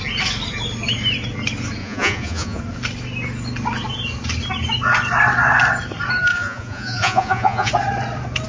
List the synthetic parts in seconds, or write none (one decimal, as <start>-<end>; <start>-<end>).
1.8-2.6; 6.3-7.7